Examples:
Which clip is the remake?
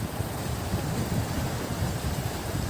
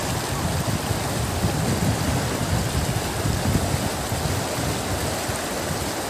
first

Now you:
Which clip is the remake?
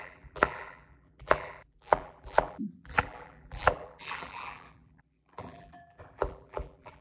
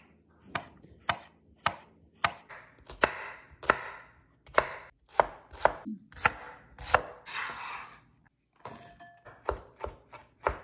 first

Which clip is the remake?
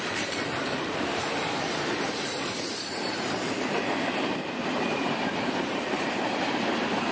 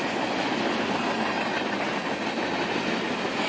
first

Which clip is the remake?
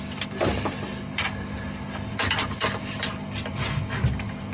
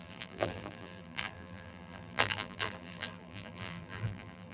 second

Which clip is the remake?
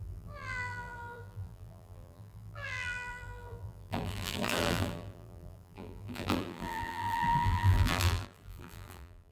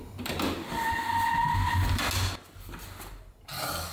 first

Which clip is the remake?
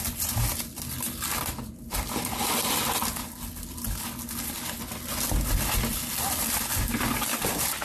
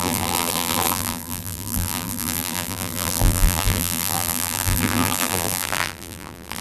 second